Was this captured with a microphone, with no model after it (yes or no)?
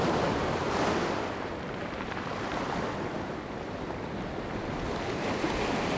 yes